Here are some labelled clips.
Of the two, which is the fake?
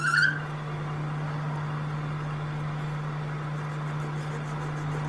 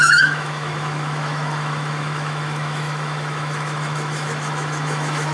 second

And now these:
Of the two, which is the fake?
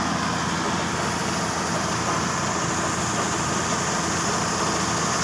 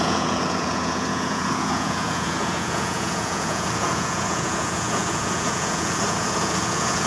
second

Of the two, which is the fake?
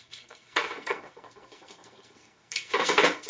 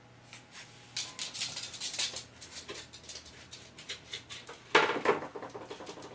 first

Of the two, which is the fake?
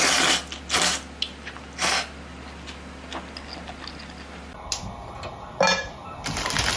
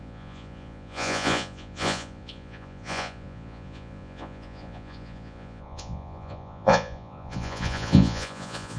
second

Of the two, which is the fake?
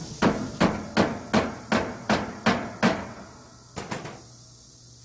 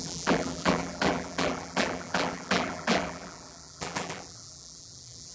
second